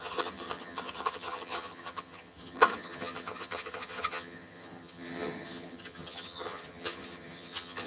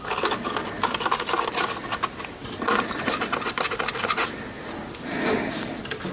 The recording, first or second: second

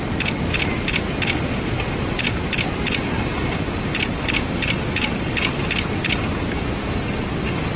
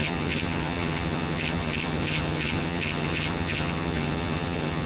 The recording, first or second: first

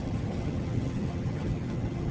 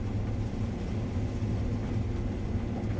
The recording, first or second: second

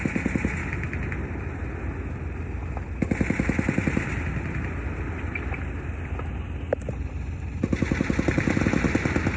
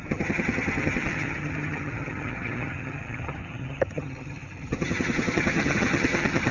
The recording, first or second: first